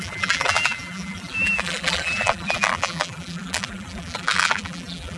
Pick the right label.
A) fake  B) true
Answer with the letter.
A